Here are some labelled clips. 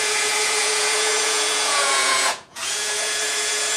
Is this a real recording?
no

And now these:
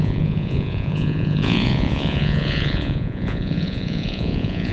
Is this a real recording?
no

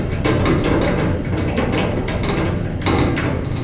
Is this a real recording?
yes